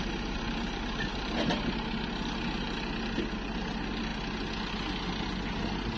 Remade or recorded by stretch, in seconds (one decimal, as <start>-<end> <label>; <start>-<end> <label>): 0.0-6.0 recorded